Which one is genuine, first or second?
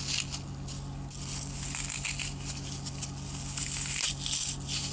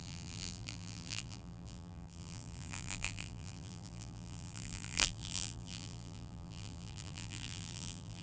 first